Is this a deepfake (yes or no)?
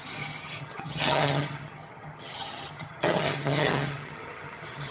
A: yes